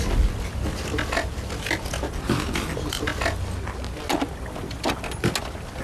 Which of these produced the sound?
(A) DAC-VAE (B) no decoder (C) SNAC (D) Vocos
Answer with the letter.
B